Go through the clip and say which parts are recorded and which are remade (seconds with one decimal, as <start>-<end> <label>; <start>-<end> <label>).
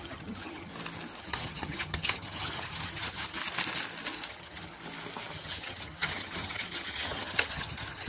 0.0-0.7 remade; 0.7-1.2 recorded; 1.2-3.4 remade; 3.4-4.3 recorded; 4.3-4.7 remade; 4.7-5.3 recorded; 5.3-8.1 remade